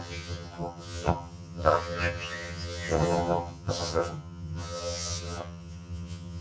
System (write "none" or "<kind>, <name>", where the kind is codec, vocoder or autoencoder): vocoder, HiFi-GAN